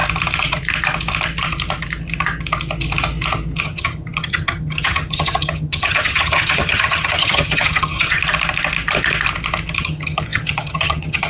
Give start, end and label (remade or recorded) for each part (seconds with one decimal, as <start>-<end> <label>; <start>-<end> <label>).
0.0-3.6 recorded; 3.6-8.2 remade; 8.2-9.8 recorded; 9.8-11.3 remade